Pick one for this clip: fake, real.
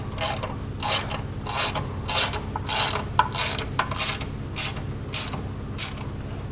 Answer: real